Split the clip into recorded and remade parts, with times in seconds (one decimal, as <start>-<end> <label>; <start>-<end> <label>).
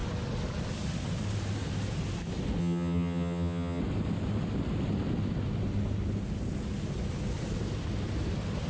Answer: 0.0-2.6 recorded; 2.6-3.8 remade; 3.8-8.7 recorded